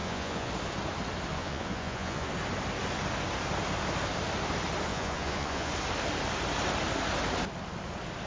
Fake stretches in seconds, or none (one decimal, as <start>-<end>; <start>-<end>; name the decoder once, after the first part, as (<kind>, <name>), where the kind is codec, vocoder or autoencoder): 0.0-0.5 (vocoder, Vocos); 1.3-2.3; 4.9-5.7